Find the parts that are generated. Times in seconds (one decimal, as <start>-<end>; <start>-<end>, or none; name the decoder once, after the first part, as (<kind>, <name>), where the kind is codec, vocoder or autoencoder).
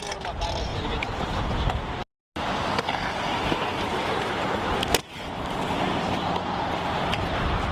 0.7-1.4 (vocoder, BigVGAN v2)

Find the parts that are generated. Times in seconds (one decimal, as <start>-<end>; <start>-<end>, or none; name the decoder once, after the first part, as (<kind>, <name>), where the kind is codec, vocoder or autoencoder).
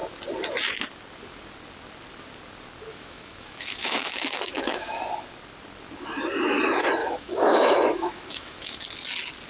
2.9-5.0 (autoencoder, DAC-VAE); 7.0-8.8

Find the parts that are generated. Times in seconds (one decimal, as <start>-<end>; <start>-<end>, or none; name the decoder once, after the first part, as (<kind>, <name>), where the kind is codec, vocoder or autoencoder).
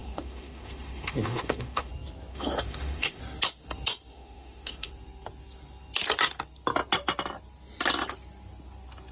0.0-1.9 (autoencoder, DAC-VAE); 2.3-3.2; 4.1-4.9